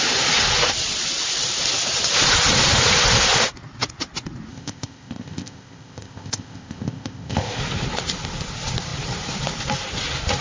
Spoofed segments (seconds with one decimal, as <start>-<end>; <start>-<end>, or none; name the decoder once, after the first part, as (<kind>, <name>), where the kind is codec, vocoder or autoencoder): 4.5-7.6 (codec, ZipCodec)